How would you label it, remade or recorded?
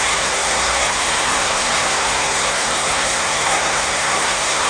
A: remade